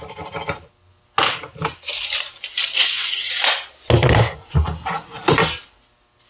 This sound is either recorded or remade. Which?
recorded